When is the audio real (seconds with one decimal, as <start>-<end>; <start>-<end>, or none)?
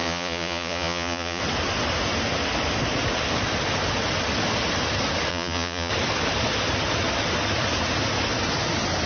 1.4-5.3; 5.9-9.1